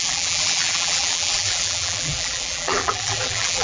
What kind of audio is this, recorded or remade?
remade